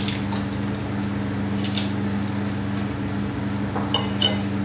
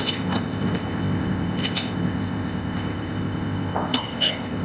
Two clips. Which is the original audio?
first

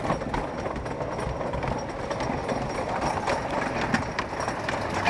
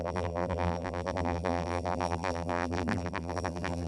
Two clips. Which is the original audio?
first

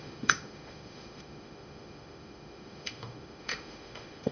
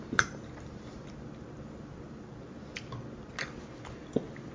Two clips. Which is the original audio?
second